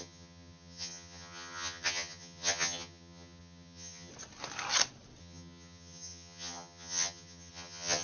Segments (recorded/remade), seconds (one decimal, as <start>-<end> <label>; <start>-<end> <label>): 0.0-4.1 remade; 4.1-5.2 recorded; 5.2-8.0 remade